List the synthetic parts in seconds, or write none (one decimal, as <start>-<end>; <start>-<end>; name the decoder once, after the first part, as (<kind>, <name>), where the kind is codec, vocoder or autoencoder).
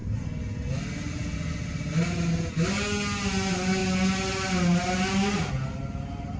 none